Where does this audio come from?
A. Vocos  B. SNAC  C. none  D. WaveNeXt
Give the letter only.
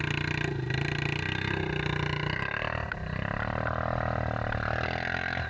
C